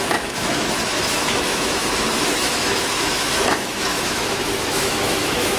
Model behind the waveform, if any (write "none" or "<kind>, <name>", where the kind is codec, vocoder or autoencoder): autoencoder, DAC-VAE